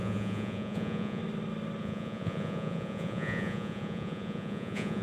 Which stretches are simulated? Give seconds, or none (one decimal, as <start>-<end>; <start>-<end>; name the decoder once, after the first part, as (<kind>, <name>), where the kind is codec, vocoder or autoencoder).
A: 0.0-1.2 (vocoder, Vocos); 1.8-5.0